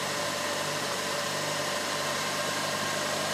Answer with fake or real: fake